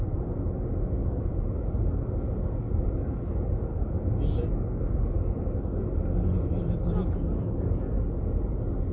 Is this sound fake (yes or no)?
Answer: no